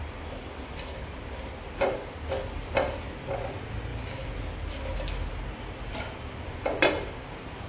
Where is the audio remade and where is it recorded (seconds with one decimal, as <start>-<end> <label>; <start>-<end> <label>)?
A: 0.0-7.7 recorded

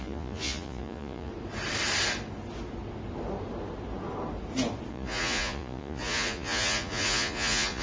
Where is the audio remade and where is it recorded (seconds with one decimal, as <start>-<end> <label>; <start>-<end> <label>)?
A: 0.0-1.3 remade; 1.3-4.9 recorded; 4.9-7.8 remade

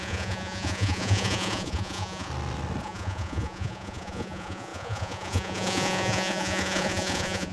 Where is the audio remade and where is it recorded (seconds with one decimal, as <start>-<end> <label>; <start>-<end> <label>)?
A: 0.0-2.3 remade; 2.3-2.8 recorded; 2.8-7.5 remade

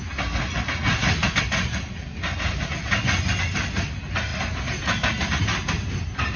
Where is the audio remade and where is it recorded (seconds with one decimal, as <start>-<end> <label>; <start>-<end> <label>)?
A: 0.0-6.4 recorded